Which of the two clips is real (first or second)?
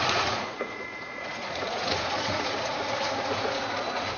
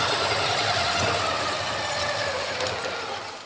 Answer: second